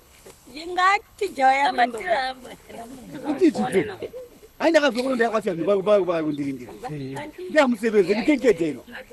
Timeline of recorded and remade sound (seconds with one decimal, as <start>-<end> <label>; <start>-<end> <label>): 0.0-9.1 remade